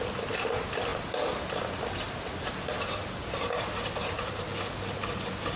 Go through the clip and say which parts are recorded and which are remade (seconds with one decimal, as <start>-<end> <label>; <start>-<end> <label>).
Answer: 0.0-5.6 recorded